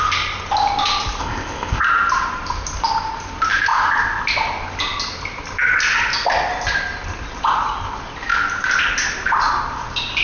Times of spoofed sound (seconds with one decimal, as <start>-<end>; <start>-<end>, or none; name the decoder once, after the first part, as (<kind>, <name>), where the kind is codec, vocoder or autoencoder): 1.2-1.8 (codec, ZipCodec)

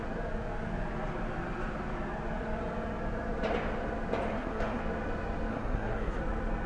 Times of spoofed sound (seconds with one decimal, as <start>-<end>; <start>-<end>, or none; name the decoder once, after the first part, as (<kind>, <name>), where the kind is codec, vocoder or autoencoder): 4.3-4.8 (codec, SNAC); 5.5-6.2

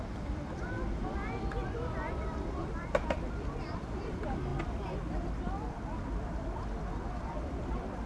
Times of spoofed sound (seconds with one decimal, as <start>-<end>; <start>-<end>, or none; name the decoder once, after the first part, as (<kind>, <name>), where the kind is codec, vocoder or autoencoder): 0.0-8.1 (vocoder, BigVGAN v2)